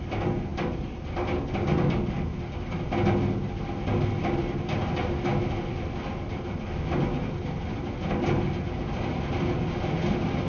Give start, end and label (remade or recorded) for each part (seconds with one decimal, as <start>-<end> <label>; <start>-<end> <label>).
0.0-10.5 recorded